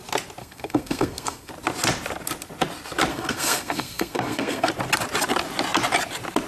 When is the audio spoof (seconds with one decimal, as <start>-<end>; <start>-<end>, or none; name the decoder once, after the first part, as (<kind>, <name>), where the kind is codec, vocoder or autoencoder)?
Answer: 0.4-1.5 (codec, SNAC); 3.1-4.7